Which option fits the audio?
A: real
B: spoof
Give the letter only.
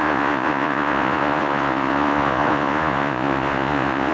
B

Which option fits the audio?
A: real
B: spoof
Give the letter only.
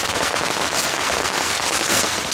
B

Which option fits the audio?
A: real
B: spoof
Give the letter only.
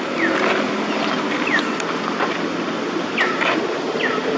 A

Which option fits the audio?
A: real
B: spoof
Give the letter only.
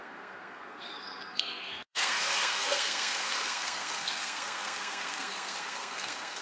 B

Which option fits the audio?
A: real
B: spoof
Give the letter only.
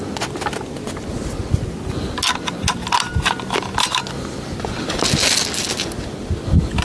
A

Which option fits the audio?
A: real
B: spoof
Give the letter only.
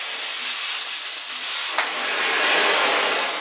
A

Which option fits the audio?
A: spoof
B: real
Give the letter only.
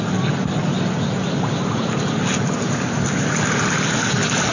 B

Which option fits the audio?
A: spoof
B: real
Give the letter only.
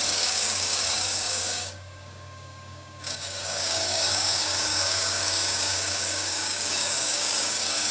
A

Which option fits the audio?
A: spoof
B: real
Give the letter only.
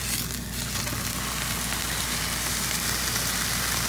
B